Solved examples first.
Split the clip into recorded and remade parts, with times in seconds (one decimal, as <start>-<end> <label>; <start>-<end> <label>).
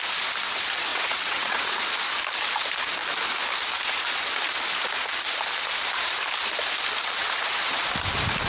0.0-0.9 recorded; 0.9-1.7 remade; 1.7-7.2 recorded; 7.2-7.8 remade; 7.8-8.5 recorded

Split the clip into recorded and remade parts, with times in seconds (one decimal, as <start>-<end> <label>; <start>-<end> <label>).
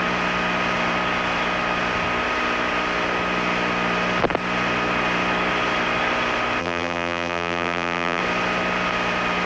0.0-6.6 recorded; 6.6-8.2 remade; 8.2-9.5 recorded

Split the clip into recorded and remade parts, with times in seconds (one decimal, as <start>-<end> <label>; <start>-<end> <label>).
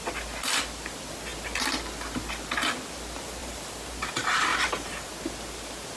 0.0-3.4 recorded; 3.4-4.1 remade; 4.1-4.5 recorded; 4.5-5.1 remade; 5.1-6.0 recorded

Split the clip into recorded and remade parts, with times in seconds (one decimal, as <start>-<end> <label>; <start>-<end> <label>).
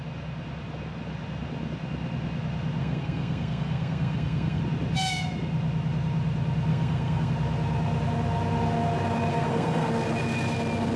0.0-2.8 recorded; 2.8-4.6 remade; 4.6-6.7 recorded; 6.7-7.3 remade; 7.3-9.3 recorded; 9.3-9.9 remade; 9.9-11.0 recorded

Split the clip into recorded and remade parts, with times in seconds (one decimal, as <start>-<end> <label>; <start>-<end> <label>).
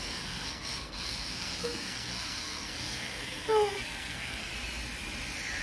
0.0-4.5 remade; 4.5-5.6 recorded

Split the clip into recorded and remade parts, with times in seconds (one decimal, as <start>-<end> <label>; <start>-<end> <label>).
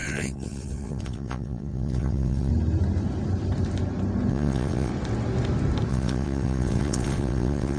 0.0-2.5 remade; 2.5-4.3 recorded; 4.3-4.9 remade; 4.9-5.9 recorded; 5.9-7.8 remade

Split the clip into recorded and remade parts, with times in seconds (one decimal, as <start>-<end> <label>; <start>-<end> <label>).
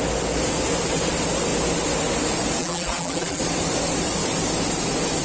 0.0-2.6 recorded; 2.6-3.4 remade; 3.4-5.2 recorded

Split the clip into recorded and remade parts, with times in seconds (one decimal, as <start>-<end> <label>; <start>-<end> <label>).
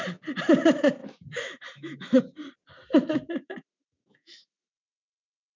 0.0-1.0 recorded; 1.0-2.2 remade; 2.2-3.1 recorded; 3.1-5.6 remade